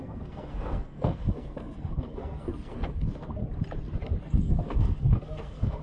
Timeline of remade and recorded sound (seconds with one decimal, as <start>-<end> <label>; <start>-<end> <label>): 0.0-3.4 remade; 3.4-4.2 recorded; 4.2-5.8 remade